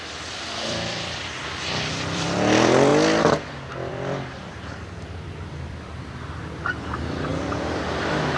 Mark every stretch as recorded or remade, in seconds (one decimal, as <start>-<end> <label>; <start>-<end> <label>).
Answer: 0.0-2.9 remade; 2.9-3.9 recorded; 3.9-8.4 remade